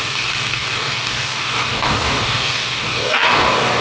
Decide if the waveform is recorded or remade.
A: remade